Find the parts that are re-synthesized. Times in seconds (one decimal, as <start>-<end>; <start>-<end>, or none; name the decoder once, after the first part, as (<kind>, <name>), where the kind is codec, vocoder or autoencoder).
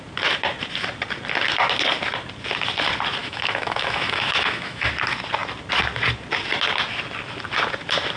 3.2-4.9 (autoencoder, DAC-VAE)